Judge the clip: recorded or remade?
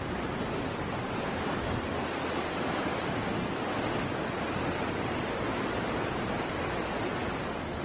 recorded